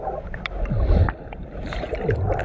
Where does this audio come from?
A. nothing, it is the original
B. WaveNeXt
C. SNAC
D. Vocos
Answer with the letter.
A